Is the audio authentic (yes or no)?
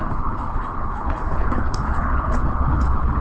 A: no